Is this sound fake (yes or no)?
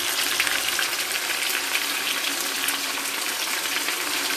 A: yes